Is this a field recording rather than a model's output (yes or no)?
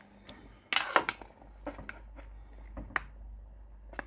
yes